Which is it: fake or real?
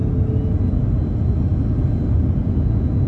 real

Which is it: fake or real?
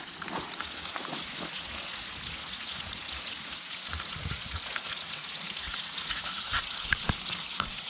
fake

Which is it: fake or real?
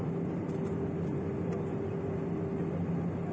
real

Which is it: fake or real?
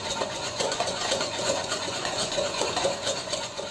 fake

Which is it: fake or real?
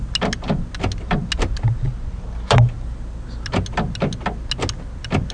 real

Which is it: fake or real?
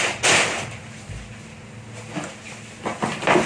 real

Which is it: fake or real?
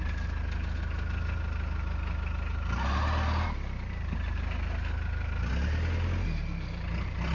real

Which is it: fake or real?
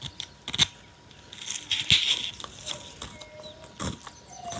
real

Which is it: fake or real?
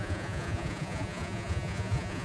fake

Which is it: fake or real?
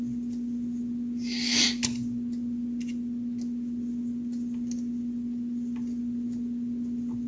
real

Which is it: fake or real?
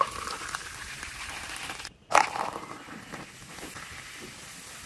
real